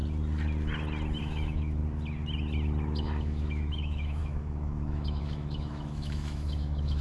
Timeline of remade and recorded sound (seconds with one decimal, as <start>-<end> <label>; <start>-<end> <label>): 0.0-1.2 recorded; 1.2-1.8 remade; 1.8-3.2 recorded; 3.2-7.0 remade